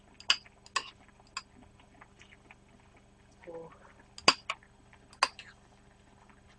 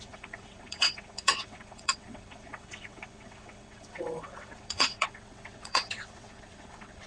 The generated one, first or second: second